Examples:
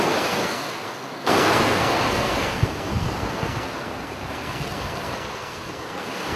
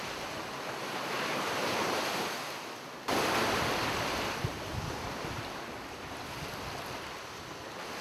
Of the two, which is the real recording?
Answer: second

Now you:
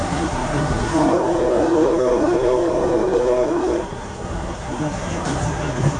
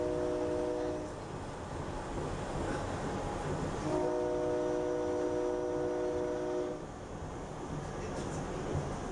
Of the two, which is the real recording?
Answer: second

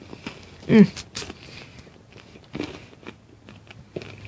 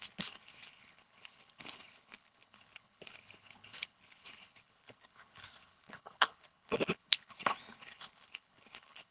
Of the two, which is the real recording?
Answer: first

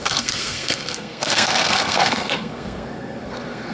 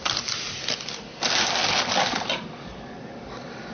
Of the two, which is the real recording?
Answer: second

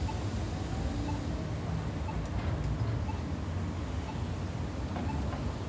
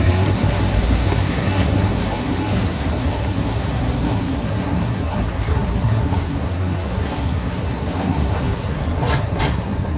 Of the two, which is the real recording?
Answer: first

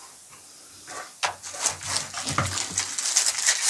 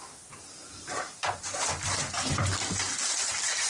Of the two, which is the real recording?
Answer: first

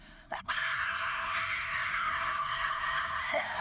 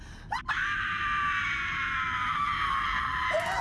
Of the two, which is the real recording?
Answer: second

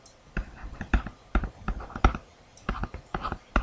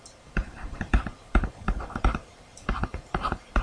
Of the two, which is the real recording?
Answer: first